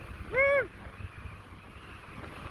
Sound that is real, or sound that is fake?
real